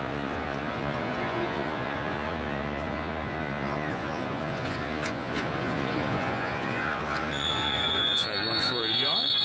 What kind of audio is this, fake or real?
fake